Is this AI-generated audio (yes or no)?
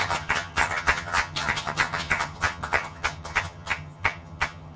yes